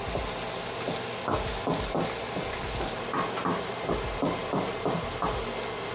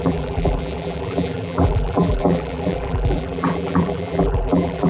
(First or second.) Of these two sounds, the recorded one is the first